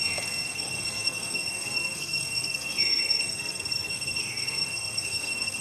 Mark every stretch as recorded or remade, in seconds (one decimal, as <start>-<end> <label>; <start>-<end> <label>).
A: 0.0-5.6 remade